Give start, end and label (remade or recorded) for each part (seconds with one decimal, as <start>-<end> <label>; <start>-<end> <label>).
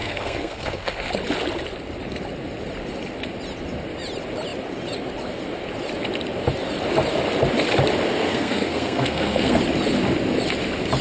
0.0-1.1 remade; 1.1-8.2 recorded; 8.2-9.6 remade; 9.6-11.0 recorded